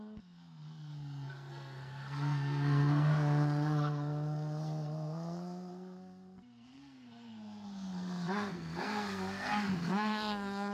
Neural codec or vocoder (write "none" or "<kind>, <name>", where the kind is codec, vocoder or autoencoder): codec, SNAC